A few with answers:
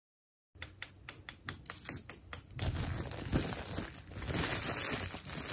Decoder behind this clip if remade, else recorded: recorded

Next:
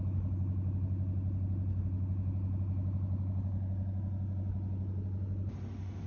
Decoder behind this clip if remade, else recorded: recorded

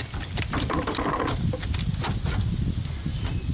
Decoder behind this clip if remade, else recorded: recorded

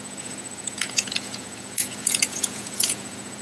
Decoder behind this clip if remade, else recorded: remade, vocoder, Vocos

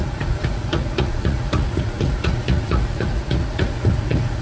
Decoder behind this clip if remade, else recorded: remade, vocoder, Vocos